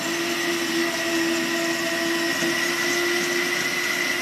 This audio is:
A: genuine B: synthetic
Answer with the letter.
A